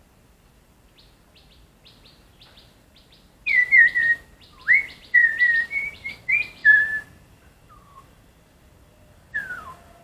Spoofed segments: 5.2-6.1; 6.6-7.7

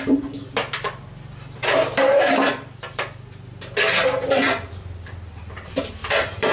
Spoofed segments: none